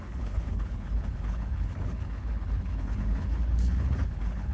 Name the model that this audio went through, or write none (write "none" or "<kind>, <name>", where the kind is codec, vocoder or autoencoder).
codec, HILCodec